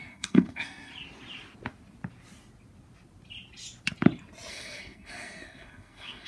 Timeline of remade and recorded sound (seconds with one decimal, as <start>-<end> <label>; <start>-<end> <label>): 0.0-0.9 remade; 0.9-4.5 recorded; 4.5-6.3 remade